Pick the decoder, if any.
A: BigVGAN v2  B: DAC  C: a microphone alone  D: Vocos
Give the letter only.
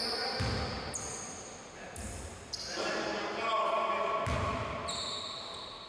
C